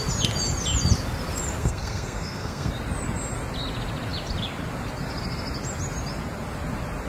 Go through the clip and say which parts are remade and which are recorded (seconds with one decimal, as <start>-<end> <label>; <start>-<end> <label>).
0.0-1.6 recorded; 1.6-2.7 remade; 2.7-7.1 recorded